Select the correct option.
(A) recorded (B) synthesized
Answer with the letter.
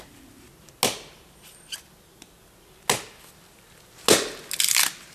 A